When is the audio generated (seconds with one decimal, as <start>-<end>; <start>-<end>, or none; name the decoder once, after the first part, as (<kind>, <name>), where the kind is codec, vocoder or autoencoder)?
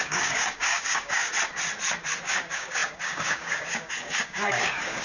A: 0.0-1.3 (codec, DAC); 2.2-5.0